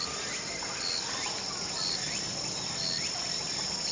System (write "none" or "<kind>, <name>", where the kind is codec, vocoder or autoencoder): none